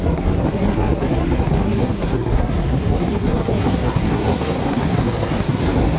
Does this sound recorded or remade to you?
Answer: remade